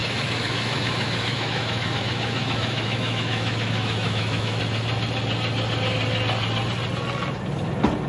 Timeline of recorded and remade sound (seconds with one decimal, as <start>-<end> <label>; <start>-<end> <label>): 0.0-4.6 remade; 4.6-8.1 recorded